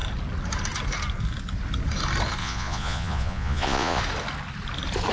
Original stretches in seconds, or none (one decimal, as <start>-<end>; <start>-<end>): 0.0-2.4; 4.0-5.1